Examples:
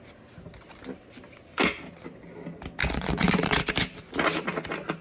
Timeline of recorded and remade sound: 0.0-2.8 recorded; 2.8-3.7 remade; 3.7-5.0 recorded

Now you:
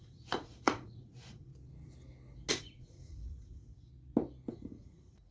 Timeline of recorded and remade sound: 0.0-1.5 remade; 1.5-2.5 recorded; 2.5-3.9 remade; 3.9-4.5 recorded; 4.5-5.3 remade

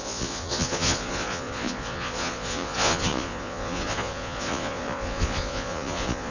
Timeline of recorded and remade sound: 0.0-6.3 remade

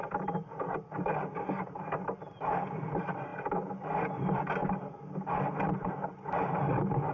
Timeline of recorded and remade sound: 0.0-7.1 recorded

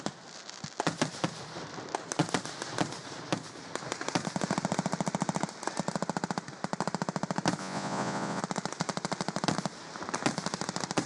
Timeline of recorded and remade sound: 0.0-7.6 recorded; 7.6-8.4 remade; 8.4-11.1 recorded